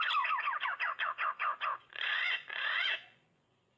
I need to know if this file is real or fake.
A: fake